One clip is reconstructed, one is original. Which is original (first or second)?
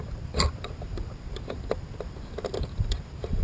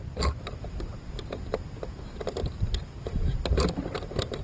second